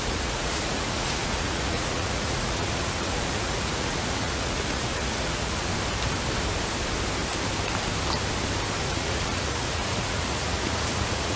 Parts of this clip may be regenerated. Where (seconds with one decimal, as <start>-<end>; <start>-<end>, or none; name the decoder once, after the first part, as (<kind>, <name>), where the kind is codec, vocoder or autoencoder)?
0.0-5.7 (vocoder, Vocos); 8.8-11.4